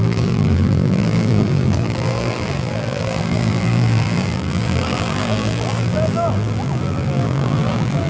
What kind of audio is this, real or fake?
fake